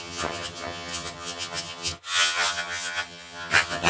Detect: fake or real fake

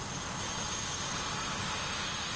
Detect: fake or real real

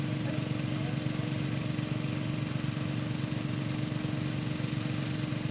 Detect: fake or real real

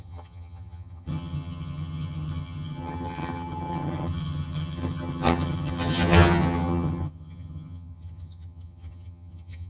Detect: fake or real fake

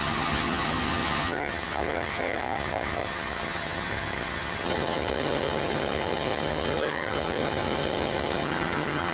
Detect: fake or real fake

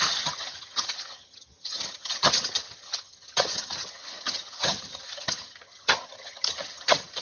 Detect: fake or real fake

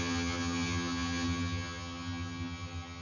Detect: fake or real fake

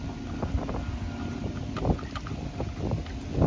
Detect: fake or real real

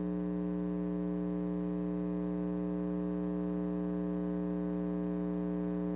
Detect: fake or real real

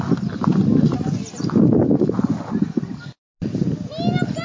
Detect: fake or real real